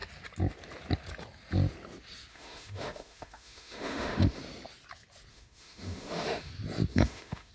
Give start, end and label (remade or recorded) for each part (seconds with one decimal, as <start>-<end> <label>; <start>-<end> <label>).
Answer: 0.0-2.3 recorded; 2.3-4.4 remade; 4.4-5.3 recorded; 5.3-6.5 remade; 6.5-6.9 recorded; 6.9-7.5 remade